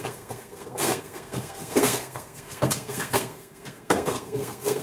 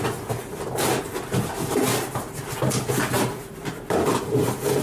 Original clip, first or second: second